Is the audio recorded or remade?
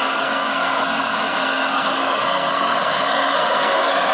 remade